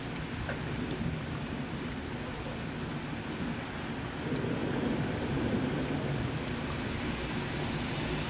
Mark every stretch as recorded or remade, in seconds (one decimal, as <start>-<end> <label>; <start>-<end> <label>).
0.0-4.9 recorded; 4.9-6.0 remade; 6.0-8.3 recorded

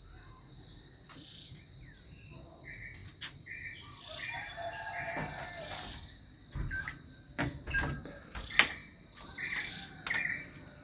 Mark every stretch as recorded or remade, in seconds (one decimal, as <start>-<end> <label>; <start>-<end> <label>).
0.0-10.8 recorded

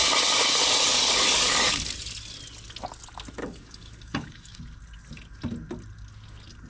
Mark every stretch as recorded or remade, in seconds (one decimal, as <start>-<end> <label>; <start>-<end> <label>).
0.0-0.9 recorded; 0.9-1.8 remade; 1.8-3.4 recorded; 3.4-4.6 remade; 4.6-6.7 recorded

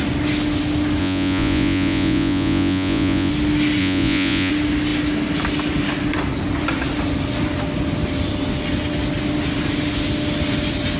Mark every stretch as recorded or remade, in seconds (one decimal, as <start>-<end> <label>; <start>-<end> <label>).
0.0-1.0 recorded; 1.0-3.3 remade; 3.3-3.8 recorded; 3.8-4.5 remade; 4.5-11.0 recorded